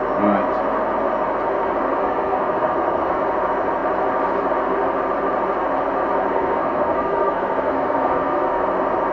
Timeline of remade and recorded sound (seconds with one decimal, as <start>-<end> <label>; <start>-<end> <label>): 0.0-2.0 recorded; 2.0-3.2 remade; 3.2-6.3 recorded; 6.3-8.6 remade; 8.6-9.1 recorded